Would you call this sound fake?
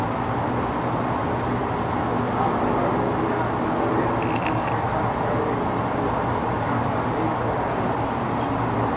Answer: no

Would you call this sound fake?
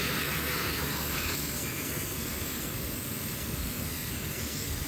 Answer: yes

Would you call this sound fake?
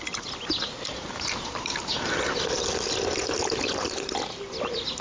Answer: no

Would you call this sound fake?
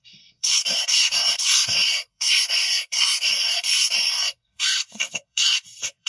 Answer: yes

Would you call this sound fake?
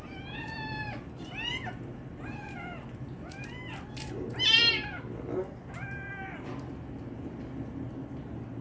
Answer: no